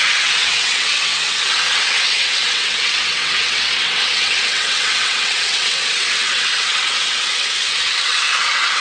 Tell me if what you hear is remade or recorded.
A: remade